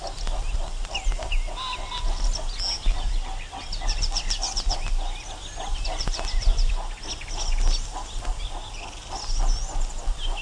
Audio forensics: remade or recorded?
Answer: recorded